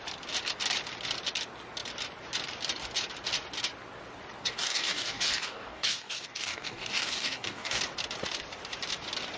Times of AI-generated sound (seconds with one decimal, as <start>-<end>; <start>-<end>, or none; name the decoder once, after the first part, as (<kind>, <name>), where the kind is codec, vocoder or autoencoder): 4.4-7.8 (codec, DAC)